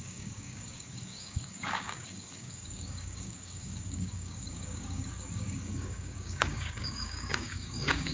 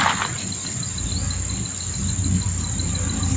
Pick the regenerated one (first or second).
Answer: first